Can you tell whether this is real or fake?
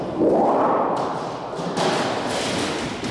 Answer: fake